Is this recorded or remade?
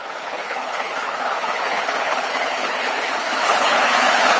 remade